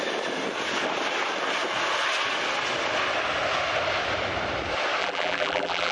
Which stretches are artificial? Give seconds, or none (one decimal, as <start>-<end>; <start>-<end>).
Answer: 5.0-5.9